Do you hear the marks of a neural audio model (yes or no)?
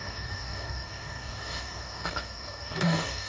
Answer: yes